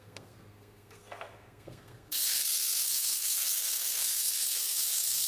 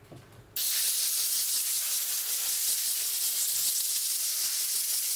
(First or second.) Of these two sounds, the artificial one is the first